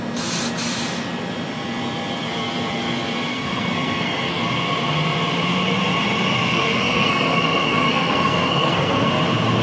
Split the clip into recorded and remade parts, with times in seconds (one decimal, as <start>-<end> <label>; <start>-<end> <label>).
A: 0.0-3.3 recorded; 3.3-4.4 remade; 4.4-6.5 recorded; 6.5-9.1 remade; 9.1-9.6 recorded